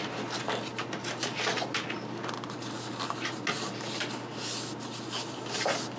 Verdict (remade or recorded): recorded